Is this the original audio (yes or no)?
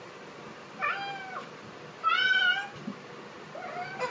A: yes